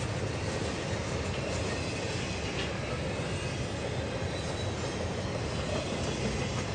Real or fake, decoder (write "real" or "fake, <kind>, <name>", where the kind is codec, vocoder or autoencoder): real